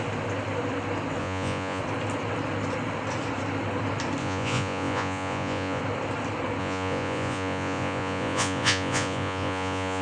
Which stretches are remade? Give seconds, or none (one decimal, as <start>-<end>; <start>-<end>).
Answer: 1.2-1.8; 4.2-5.8; 6.6-10.0